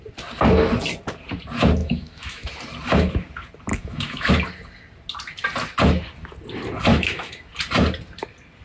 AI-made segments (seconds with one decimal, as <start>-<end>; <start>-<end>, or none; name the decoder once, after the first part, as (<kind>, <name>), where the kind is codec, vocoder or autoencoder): 1.8-2.5 (autoencoder, DAC-VAE); 3.7-4.3; 6.9-7.5